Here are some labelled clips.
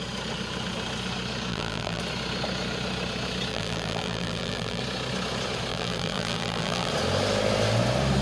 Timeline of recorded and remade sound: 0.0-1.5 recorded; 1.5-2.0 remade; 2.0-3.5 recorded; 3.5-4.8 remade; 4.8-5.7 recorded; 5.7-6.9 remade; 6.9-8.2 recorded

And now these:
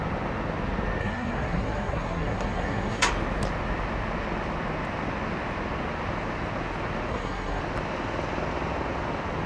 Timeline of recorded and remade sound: 0.0-1.0 recorded; 1.0-3.1 remade; 3.1-7.1 recorded; 7.1-7.6 remade; 7.6-9.5 recorded